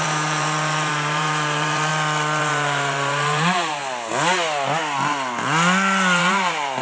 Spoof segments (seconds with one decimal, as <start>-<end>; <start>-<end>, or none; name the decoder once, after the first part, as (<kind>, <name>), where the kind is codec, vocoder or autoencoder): 0.0-1.9 (vocoder, BigVGAN v2); 2.4-3.8; 6.2-6.8